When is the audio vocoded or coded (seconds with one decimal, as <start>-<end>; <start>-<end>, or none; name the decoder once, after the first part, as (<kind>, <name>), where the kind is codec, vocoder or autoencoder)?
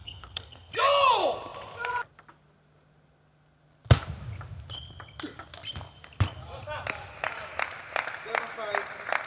0.0-0.7 (codec, SNAC)